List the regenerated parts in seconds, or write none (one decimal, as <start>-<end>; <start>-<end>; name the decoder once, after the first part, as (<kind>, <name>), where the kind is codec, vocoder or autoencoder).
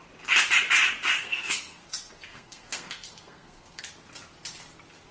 1.2-1.8 (codec, SNAC); 2.3-3.8